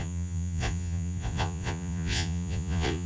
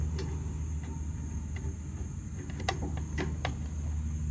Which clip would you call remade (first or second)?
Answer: first